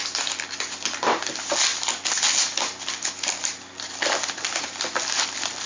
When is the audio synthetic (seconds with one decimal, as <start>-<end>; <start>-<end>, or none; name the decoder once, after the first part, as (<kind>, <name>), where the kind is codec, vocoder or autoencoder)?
none